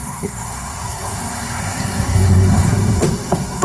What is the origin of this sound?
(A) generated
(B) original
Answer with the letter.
A